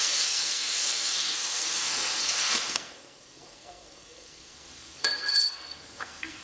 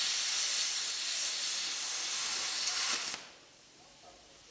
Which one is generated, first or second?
first